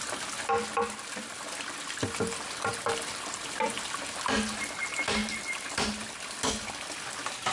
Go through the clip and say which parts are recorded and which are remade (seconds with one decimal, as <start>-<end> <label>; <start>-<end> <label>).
0.0-2.7 recorded; 2.7-3.3 remade; 3.3-5.2 recorded; 5.2-6.1 remade; 6.1-7.5 recorded